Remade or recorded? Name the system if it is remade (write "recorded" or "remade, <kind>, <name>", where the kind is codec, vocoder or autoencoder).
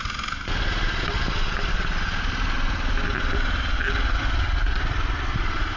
recorded